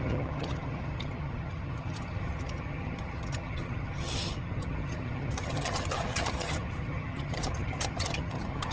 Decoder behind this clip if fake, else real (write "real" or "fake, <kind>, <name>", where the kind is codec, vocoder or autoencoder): fake, vocoder, HiFi-GAN